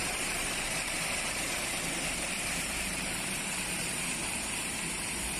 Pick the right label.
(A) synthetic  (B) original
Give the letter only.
A